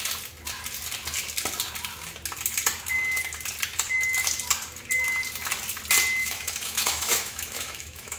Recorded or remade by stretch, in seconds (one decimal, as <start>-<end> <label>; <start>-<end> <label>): 0.0-6.2 recorded; 6.2-8.2 remade